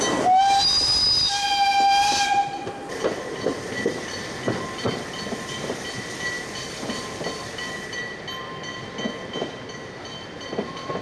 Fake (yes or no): no